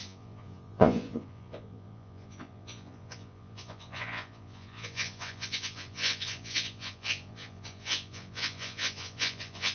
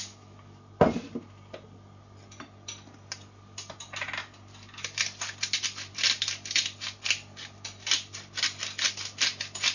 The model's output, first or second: first